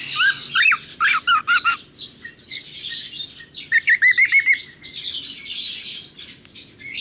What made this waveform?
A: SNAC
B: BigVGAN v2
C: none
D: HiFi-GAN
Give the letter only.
C